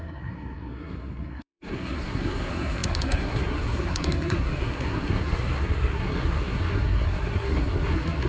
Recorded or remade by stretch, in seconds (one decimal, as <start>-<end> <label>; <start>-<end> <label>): 0.0-8.3 remade